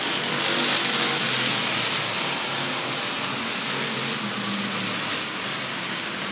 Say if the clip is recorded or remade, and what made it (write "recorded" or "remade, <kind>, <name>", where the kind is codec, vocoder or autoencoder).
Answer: recorded